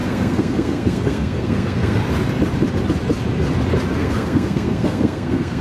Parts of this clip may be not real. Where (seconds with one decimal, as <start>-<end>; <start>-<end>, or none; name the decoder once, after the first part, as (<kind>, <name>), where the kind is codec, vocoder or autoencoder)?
0.0-2.0 (codec, SNAC); 4.0-5.6